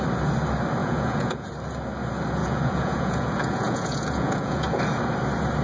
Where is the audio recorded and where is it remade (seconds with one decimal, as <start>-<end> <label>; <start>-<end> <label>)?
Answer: 0.0-0.8 recorded; 0.8-1.5 remade; 1.5-2.4 recorded; 2.4-4.8 remade; 4.8-5.6 recorded